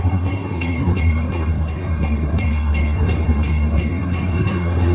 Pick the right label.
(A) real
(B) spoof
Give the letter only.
B